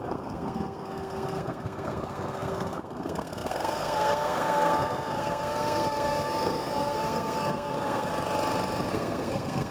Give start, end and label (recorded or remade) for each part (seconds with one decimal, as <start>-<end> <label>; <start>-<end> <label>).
0.0-8.1 remade; 8.1-8.9 recorded; 8.9-9.7 remade